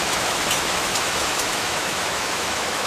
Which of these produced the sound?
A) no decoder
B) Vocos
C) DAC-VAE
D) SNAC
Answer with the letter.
C